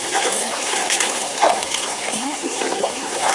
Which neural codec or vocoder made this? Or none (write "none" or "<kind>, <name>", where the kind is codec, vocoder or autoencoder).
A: codec, SNAC